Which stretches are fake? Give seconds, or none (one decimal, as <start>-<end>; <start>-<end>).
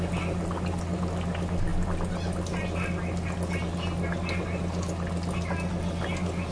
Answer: none